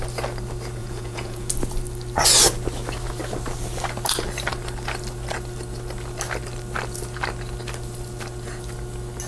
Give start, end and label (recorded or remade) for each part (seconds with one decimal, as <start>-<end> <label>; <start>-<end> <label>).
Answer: 0.0-0.8 recorded; 0.8-1.5 remade; 1.5-9.3 recorded